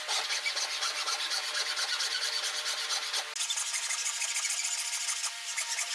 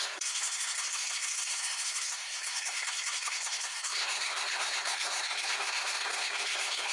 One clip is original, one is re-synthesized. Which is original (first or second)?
first